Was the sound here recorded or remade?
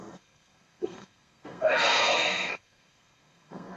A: remade